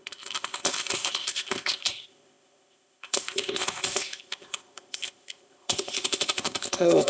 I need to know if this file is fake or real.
fake